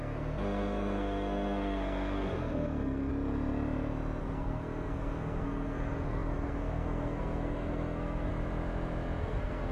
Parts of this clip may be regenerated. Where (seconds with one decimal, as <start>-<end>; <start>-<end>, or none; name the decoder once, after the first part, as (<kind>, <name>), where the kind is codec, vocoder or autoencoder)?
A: 0.0-3.1 (codec, SNAC); 4.2-8.3; 9.2-9.7